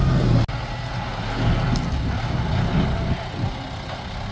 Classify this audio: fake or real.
real